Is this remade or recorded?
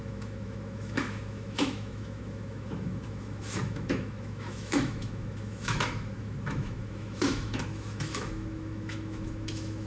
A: remade